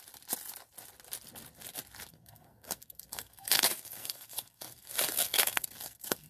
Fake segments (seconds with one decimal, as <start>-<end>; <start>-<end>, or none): 2.1-6.3